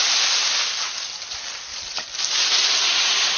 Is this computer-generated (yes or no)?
no